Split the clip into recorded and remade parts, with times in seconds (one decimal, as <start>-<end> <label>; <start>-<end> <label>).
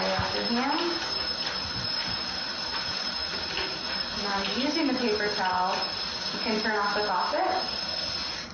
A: 0.0-8.5 recorded